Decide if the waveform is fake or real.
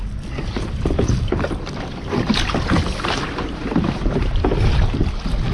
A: real